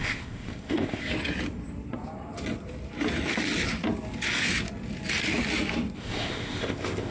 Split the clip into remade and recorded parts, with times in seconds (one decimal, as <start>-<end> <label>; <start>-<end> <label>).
0.0-1.1 remade; 1.1-6.0 recorded; 6.0-7.1 remade